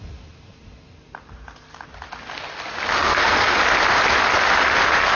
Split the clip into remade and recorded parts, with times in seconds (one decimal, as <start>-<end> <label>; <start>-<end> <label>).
0.0-3.0 recorded; 3.0-3.6 remade; 3.6-5.1 recorded